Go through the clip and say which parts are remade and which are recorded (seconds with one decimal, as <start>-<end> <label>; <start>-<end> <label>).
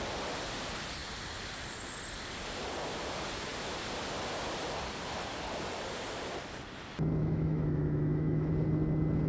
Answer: 0.0-7.2 recorded; 7.2-8.5 remade; 8.5-9.3 recorded